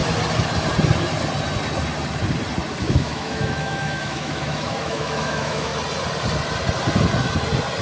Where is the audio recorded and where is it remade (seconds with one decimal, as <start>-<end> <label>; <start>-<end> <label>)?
0.0-2.8 recorded; 2.8-5.7 remade; 5.7-7.8 recorded